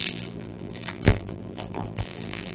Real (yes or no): no